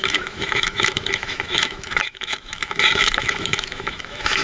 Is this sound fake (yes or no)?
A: yes